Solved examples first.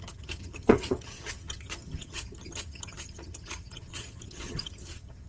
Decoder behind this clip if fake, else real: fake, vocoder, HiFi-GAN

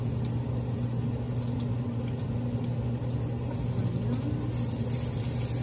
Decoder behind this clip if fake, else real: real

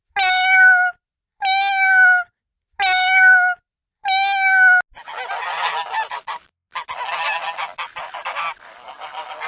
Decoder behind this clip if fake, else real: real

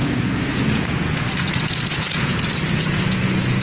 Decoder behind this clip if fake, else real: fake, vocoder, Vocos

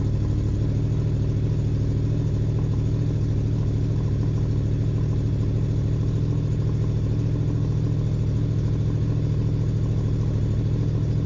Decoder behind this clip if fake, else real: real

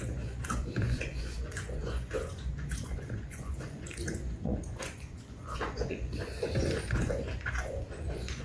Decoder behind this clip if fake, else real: fake, vocoder, Vocos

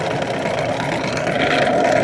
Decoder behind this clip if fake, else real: real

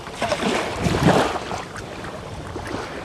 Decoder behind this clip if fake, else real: real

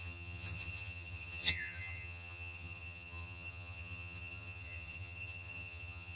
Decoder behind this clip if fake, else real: fake, vocoder, HiFi-GAN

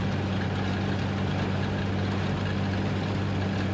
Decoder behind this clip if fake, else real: real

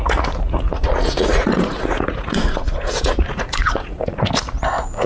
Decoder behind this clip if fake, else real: fake, vocoder, Vocos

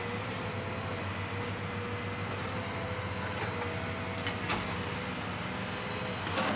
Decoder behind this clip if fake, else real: real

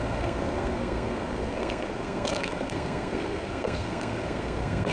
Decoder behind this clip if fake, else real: fake, codec, SNAC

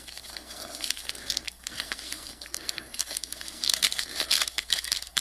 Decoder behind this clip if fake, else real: fake, codec, SNAC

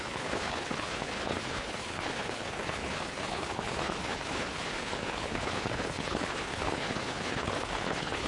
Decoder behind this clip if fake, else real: fake, codec, HILCodec